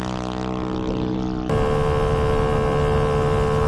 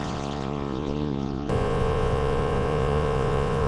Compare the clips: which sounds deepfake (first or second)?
second